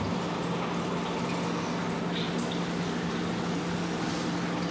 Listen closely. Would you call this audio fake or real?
real